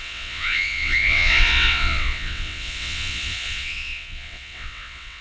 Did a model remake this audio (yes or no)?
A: yes